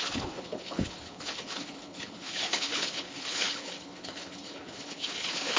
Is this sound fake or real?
fake